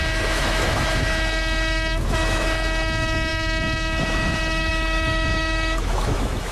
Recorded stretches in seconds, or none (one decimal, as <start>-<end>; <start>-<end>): none